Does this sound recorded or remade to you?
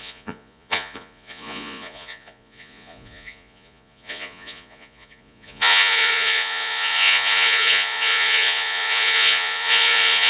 remade